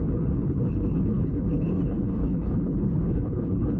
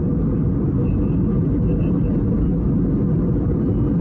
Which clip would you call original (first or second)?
second